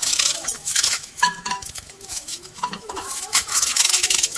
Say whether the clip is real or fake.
fake